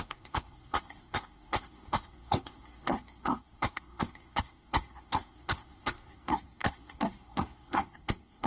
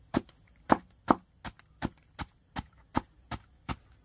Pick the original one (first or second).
second